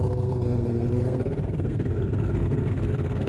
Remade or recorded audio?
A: remade